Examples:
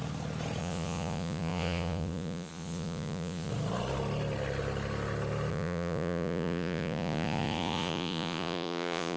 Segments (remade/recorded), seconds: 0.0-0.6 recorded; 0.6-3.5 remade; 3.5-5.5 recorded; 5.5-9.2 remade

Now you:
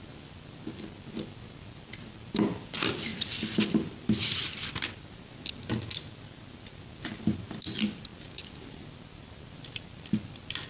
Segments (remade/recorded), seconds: 0.0-10.7 recorded

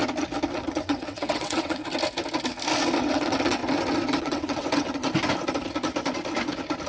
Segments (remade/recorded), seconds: 0.0-0.5 recorded; 0.5-1.8 remade; 1.8-3.1 recorded; 3.1-3.6 remade; 3.6-4.2 recorded; 4.2-5.0 remade; 5.0-6.9 recorded

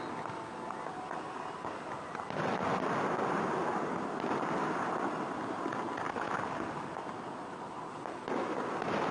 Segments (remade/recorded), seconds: 0.0-9.1 recorded

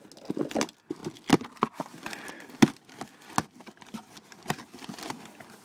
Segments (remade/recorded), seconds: 0.0-5.6 recorded

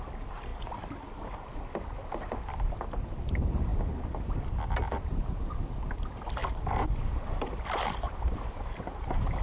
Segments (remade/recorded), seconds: 0.0-9.4 recorded